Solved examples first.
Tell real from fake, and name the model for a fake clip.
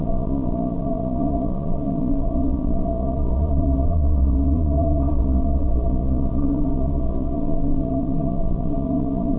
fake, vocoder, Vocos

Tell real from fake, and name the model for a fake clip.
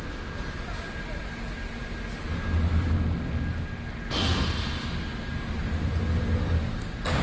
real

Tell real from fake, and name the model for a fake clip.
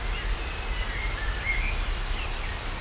real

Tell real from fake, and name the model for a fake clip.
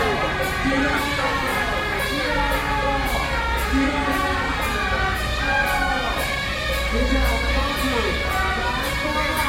real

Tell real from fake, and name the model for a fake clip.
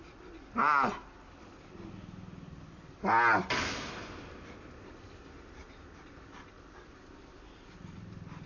real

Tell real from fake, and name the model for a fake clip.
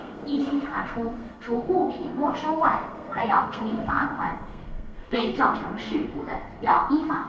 fake, codec, SNAC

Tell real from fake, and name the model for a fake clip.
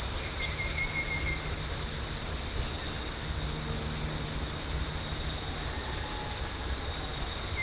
real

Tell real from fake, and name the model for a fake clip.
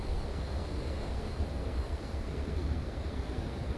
fake, codec, SNAC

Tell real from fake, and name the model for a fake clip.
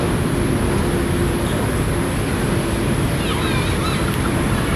real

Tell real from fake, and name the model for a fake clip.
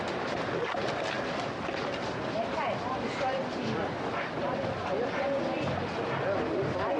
real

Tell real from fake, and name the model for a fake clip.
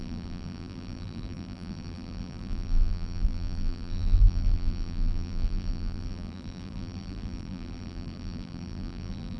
fake, vocoder, BigVGAN v2